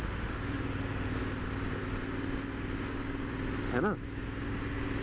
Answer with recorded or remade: recorded